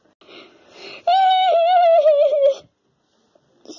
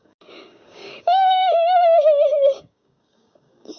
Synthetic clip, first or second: second